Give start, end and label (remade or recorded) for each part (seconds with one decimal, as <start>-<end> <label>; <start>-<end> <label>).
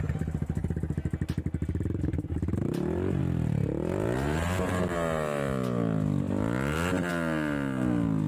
0.0-8.3 recorded